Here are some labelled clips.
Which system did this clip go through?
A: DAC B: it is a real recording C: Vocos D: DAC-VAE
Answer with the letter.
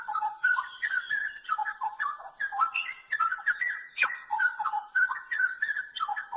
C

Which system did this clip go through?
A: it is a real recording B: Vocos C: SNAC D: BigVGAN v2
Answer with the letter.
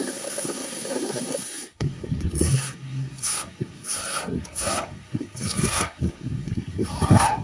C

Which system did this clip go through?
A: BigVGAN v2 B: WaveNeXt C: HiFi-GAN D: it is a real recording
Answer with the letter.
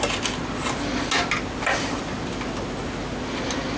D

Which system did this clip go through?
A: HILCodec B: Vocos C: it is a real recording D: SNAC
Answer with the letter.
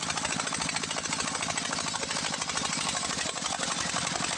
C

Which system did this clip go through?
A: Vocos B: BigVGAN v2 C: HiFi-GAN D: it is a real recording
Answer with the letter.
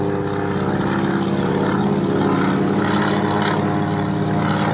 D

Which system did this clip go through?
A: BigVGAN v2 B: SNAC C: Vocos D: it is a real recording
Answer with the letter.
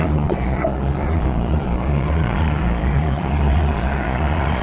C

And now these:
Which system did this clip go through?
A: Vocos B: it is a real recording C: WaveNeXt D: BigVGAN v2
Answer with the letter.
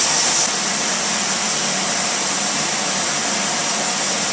B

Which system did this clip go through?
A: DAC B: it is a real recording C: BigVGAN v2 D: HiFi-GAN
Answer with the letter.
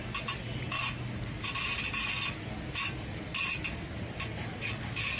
B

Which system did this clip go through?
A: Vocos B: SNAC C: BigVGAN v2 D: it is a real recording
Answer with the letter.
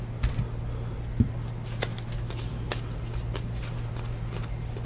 D